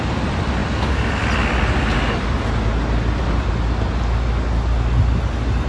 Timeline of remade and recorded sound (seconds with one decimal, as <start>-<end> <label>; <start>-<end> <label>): 0.0-5.7 recorded